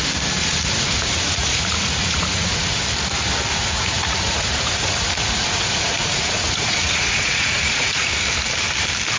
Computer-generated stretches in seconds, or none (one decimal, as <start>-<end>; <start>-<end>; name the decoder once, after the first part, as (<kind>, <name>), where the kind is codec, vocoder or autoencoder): 0.4-2.8 (vocoder, Vocos); 3.5-8.1